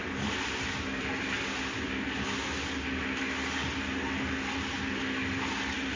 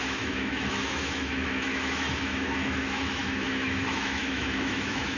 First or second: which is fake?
second